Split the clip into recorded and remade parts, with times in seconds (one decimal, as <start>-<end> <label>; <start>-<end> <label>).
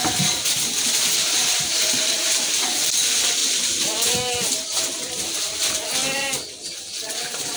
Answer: 0.0-1.4 recorded; 1.4-2.5 remade; 2.5-3.4 recorded; 3.4-5.6 remade; 5.6-7.6 recorded